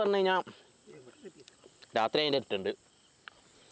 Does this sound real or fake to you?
real